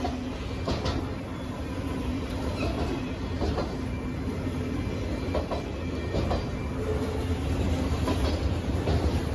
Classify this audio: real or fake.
real